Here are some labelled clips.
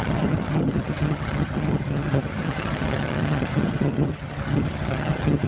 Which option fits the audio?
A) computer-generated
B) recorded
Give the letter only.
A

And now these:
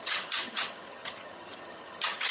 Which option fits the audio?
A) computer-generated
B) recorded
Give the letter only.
A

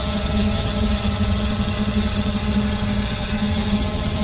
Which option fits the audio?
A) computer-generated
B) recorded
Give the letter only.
A